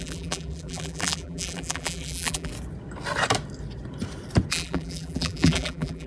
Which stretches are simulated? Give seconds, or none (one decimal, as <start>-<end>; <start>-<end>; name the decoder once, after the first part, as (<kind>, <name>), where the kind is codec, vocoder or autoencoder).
0.0-2.5 (vocoder, BigVGAN v2); 4.5-6.1